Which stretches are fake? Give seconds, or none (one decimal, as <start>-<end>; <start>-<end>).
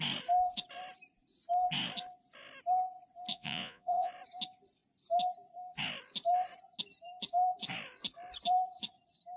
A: 3.3-4.1